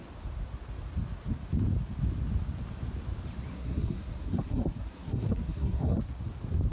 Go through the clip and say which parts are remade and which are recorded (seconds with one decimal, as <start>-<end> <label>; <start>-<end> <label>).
0.0-3.5 recorded; 3.5-6.0 remade; 6.0-6.7 recorded